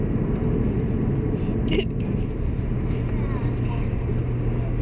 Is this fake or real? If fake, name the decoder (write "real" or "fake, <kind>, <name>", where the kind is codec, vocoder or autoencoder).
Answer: real